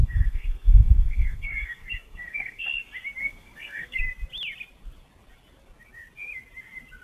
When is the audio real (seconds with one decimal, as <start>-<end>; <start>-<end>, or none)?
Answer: 2.6-3.2; 4.0-7.0